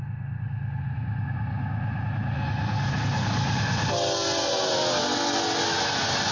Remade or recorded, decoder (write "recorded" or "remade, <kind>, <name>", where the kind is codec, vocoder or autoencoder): recorded